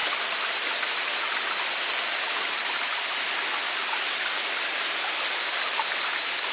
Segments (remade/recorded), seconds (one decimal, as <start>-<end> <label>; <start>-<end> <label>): 0.0-6.5 recorded